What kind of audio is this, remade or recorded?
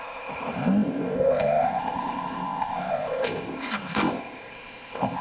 remade